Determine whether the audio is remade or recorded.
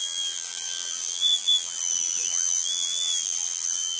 remade